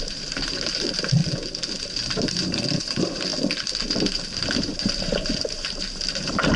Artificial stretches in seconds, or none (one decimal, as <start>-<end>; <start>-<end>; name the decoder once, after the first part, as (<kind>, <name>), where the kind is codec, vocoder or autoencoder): 0.0-1.2 (vocoder, BigVGAN v2); 1.8-3.3; 4.5-6.6